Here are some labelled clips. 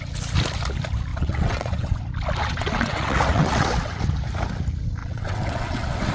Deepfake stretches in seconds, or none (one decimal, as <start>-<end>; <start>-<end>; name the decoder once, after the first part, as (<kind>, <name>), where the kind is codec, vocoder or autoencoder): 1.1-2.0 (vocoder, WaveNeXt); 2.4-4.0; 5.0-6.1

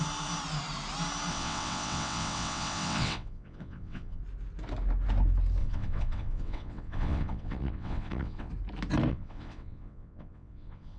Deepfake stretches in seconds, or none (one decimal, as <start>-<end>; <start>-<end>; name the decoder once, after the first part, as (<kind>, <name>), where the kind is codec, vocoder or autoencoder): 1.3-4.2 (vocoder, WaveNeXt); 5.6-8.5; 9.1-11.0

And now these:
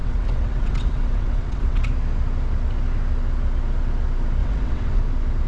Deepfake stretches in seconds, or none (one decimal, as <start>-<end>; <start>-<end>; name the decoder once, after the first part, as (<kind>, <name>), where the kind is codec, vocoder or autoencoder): 0.0-1.9 (vocoder, WaveNeXt); 4.4-5.0

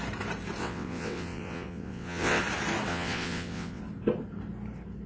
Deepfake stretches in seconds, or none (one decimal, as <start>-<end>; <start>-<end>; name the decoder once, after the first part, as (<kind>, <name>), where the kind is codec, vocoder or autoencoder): 0.6-2.4 (vocoder, WaveNeXt); 2.9-3.8

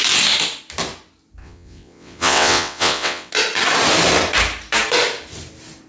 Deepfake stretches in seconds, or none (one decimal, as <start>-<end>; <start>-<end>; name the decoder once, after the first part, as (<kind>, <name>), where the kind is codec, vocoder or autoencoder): 1.4-3.3 (vocoder, WaveNeXt)

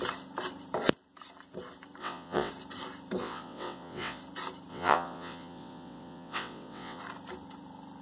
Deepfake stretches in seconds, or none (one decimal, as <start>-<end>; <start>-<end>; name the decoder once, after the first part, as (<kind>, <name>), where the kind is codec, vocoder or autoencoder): 2.0-2.5 (vocoder, WaveNeXt); 3.2-4.2; 4.7-7.0

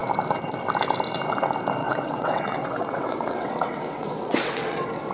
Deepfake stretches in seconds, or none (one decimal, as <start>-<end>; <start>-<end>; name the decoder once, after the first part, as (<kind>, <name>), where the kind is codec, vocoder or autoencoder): 1.8-5.1 (vocoder, WaveNeXt)

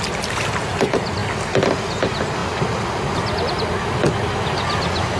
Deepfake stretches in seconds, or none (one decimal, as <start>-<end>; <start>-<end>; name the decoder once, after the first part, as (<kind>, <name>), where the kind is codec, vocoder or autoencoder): none